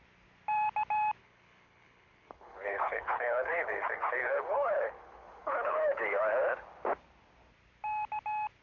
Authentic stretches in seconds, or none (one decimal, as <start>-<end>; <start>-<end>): 0.0-1.2; 6.2-8.6